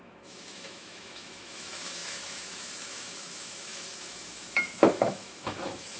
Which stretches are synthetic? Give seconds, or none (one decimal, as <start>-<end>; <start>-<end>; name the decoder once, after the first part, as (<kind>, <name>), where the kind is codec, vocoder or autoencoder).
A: 0.0-6.0 (autoencoder, DAC-VAE)